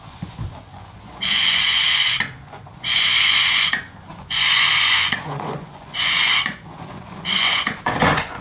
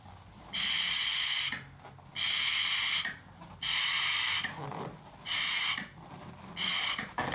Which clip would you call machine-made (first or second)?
first